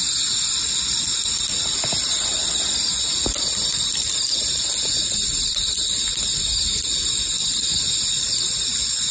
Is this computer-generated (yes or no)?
no